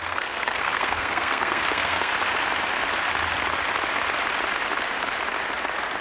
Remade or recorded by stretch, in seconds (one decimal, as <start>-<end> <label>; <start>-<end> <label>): 0.0-2.1 remade; 2.1-6.0 recorded